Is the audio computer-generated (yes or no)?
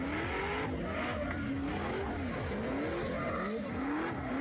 no